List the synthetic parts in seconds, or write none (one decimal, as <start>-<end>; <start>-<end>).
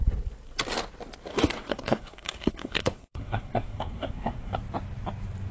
1.3-4.6